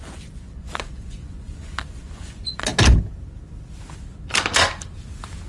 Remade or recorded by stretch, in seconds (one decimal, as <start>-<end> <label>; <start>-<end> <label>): 0.0-2.7 remade; 2.7-5.5 recorded